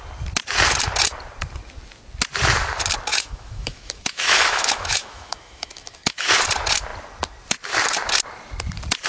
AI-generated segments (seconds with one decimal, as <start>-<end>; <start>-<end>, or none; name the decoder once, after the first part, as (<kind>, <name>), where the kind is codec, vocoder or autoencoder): 3.1-6.3 (autoencoder, DAC-VAE)